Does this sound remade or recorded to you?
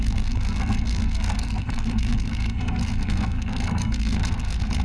remade